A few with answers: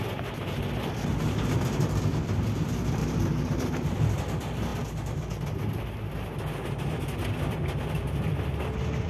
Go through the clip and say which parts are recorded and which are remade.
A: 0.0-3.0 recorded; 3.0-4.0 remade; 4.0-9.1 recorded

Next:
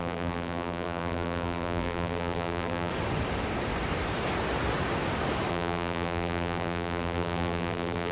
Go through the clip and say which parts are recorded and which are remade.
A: 0.0-2.9 remade; 2.9-5.5 recorded; 5.5-8.1 remade

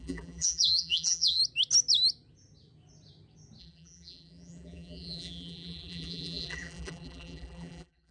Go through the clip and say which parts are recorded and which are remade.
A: 0.0-1.4 remade; 1.4-3.6 recorded; 3.6-8.1 remade

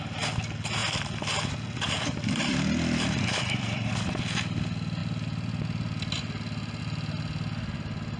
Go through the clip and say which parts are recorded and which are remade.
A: 0.0-0.8 recorded; 0.8-3.9 remade; 3.9-8.2 recorded

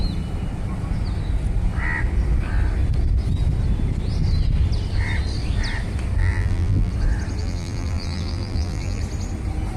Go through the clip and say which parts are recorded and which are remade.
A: 0.0-6.2 recorded; 6.2-6.9 remade; 6.9-7.4 recorded; 7.4-9.0 remade; 9.0-9.8 recorded

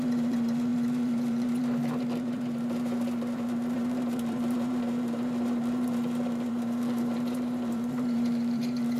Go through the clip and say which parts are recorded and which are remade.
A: 0.0-9.0 remade